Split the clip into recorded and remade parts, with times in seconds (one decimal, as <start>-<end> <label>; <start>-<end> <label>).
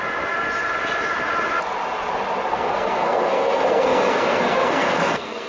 0.0-2.5 recorded; 2.5-5.5 remade